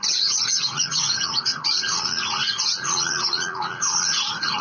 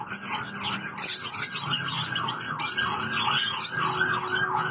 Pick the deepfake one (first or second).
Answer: first